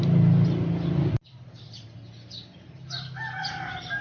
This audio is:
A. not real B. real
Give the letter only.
B